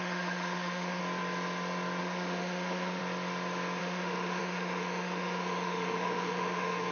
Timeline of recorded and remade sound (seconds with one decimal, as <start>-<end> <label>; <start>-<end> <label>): 0.0-1.0 remade; 1.0-2.0 recorded; 2.0-3.0 remade; 3.0-3.8 recorded; 3.8-6.9 remade